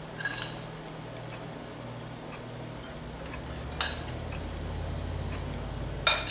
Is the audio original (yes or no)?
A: yes